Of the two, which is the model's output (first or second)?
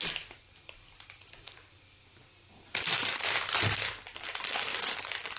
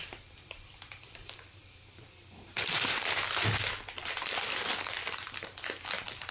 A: second